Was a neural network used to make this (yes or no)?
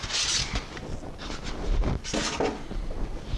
no